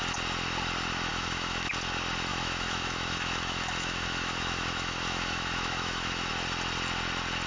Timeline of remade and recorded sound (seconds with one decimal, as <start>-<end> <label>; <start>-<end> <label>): 0.0-1.1 recorded; 1.1-1.7 remade; 1.7-2.3 recorded; 2.3-6.3 remade; 6.3-7.5 recorded